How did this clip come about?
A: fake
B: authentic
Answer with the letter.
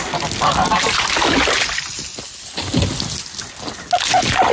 B